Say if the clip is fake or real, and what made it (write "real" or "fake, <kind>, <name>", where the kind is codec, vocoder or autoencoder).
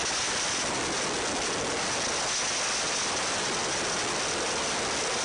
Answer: real